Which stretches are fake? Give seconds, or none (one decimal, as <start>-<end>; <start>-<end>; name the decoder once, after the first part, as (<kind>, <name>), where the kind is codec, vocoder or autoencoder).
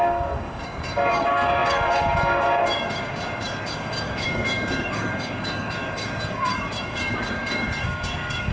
0.0-8.5 (codec, DAC)